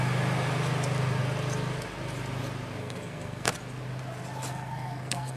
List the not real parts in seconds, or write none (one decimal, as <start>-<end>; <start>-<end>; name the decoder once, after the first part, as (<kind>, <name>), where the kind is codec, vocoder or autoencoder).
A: 2.8-3.5 (codec, SNAC); 4.5-5.4